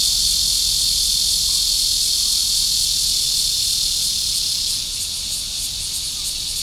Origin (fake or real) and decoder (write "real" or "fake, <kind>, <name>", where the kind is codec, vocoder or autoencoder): real